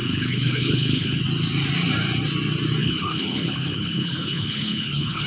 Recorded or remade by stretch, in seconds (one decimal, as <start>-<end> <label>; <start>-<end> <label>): 0.0-1.2 remade; 1.2-2.8 recorded; 2.8-5.3 remade